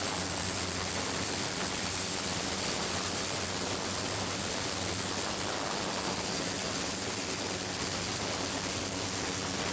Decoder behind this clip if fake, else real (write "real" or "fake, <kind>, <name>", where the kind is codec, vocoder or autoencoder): real